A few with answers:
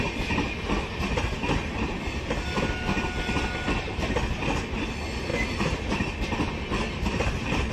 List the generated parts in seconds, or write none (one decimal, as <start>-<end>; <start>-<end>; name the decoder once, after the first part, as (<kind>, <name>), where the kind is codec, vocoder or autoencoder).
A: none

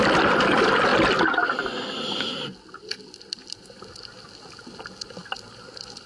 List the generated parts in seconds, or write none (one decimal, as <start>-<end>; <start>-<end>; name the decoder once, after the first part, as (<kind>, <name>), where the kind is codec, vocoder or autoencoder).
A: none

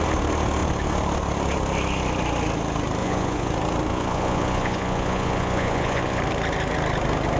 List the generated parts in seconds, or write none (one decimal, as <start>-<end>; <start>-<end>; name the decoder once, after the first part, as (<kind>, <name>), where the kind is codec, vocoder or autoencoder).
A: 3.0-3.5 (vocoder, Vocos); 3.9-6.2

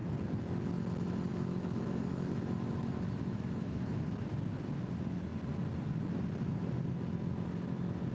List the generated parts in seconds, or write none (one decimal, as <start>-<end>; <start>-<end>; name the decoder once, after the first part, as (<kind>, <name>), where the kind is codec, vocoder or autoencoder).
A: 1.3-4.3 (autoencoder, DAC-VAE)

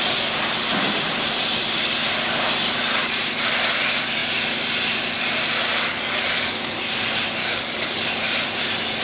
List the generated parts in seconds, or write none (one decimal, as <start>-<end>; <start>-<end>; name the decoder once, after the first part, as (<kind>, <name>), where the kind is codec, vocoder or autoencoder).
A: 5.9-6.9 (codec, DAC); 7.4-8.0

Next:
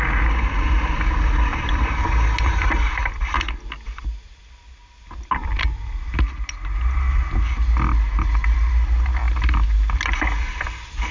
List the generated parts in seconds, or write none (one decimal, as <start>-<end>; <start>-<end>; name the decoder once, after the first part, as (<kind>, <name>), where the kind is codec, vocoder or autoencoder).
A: none